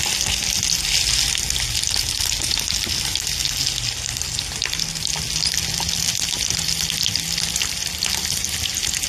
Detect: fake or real real